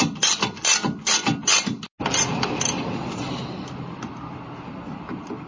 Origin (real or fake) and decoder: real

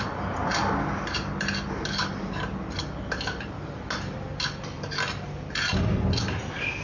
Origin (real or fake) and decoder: real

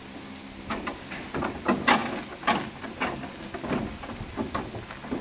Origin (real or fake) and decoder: real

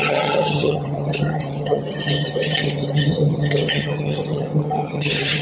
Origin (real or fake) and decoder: fake, vocoder, HiFi-GAN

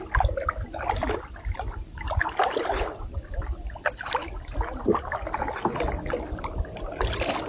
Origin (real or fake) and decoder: real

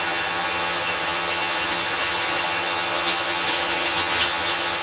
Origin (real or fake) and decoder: fake, vocoder, HiFi-GAN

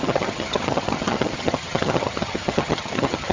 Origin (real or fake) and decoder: fake, vocoder, HiFi-GAN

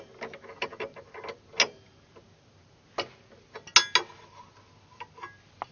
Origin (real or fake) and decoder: real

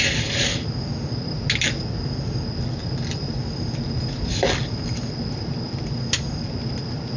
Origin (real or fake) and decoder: real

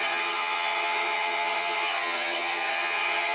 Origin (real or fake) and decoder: fake, vocoder, HiFi-GAN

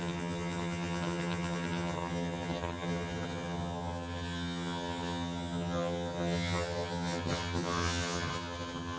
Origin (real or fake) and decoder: fake, vocoder, HiFi-GAN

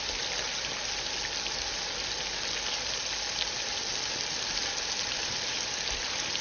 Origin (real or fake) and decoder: real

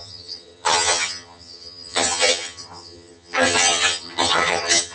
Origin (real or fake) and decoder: fake, vocoder, HiFi-GAN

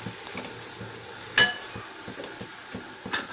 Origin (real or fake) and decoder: real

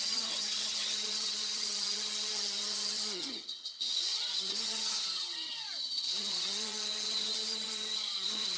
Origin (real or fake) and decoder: fake, vocoder, HiFi-GAN